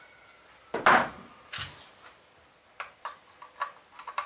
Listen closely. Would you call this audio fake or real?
real